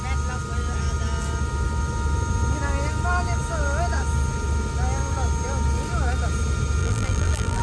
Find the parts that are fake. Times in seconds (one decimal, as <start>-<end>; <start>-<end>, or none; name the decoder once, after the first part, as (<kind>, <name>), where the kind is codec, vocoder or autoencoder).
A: 6.8-7.6 (vocoder, BigVGAN v2)

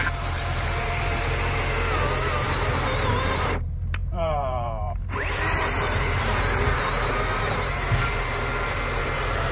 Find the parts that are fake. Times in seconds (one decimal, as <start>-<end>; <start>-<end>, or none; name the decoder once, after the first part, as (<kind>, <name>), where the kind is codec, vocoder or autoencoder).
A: 0.0-8.5 (vocoder, BigVGAN v2); 9.0-9.5